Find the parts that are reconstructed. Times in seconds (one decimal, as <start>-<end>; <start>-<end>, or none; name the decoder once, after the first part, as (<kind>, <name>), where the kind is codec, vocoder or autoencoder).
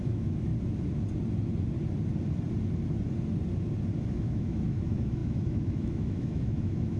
0.0-0.5 (autoencoder, DAC-VAE); 4.1-7.0